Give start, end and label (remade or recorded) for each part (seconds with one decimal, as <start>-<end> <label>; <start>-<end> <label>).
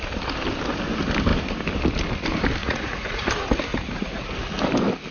0.0-2.6 recorded; 2.6-3.3 remade; 3.3-3.7 recorded; 3.7-4.3 remade; 4.3-5.1 recorded